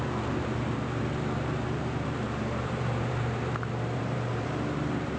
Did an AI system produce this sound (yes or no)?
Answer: yes